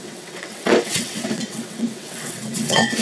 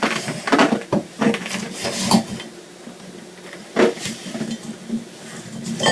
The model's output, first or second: first